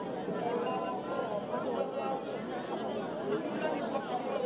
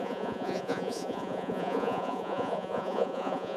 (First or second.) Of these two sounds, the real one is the first